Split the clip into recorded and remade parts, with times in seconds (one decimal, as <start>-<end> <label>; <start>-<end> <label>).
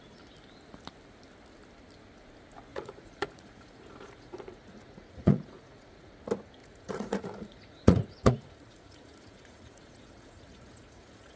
0.0-2.7 recorded; 2.7-6.1 remade; 6.1-6.6 recorded; 6.6-11.4 remade